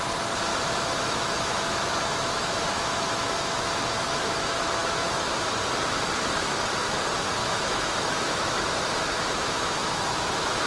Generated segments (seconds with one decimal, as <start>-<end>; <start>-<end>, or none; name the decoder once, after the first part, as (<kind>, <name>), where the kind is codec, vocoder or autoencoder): 0.5-5.5 (autoencoder, DAC-VAE); 7.4-10.7